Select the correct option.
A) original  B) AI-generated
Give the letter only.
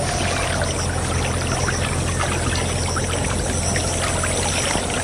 A